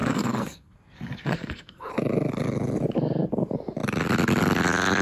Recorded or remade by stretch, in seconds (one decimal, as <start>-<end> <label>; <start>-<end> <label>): 0.0-1.9 remade; 1.9-5.0 recorded